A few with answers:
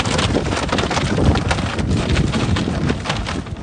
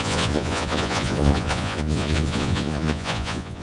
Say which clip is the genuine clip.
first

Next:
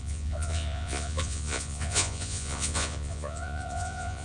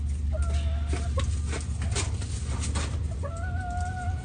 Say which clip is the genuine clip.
second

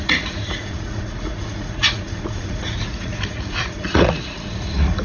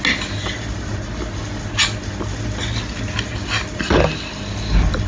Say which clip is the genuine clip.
second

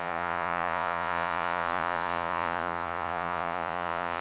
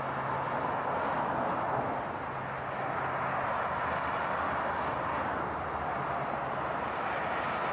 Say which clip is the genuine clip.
second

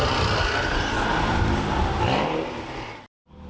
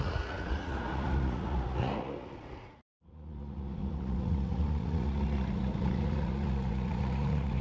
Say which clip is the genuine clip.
first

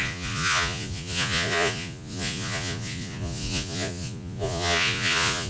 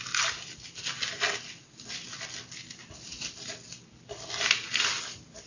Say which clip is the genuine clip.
second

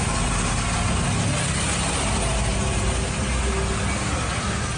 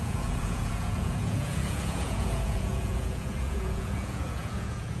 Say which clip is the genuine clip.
first